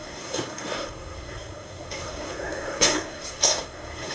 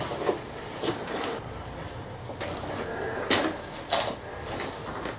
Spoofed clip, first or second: first